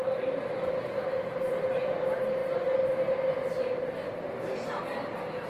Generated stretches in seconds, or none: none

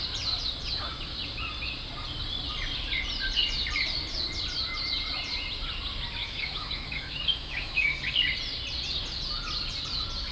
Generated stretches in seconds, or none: 6.2-8.0 (autoencoder, DAC-VAE)

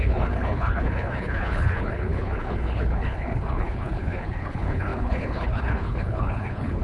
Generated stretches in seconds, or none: 0.0-6.8 (codec, HILCodec)